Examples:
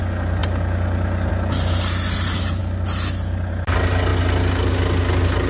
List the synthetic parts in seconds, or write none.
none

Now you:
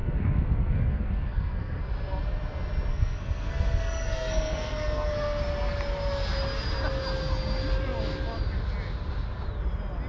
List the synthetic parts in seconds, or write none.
0.0-1.8 (codec, SNAC); 2.9-5.4

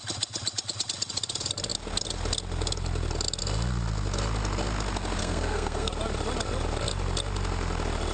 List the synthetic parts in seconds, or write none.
5.2-5.9 (codec, SNAC)

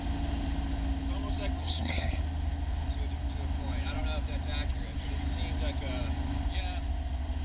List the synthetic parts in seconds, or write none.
1.6-2.2 (codec, SNAC)